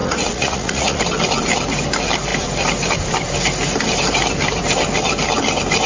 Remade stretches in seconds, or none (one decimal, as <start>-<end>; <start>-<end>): 0.0-1.0